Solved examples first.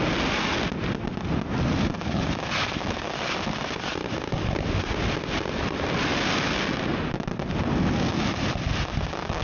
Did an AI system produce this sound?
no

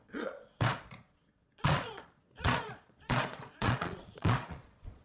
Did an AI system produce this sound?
yes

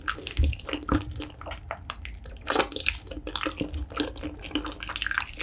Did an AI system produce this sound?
no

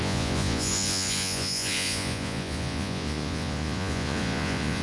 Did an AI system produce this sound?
yes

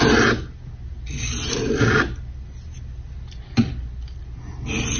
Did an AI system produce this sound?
no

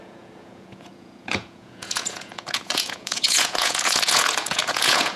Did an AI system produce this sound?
yes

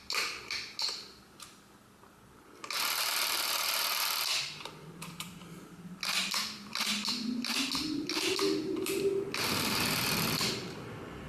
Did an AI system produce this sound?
no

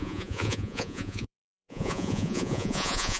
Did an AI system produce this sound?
yes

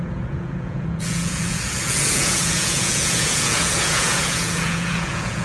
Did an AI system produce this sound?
yes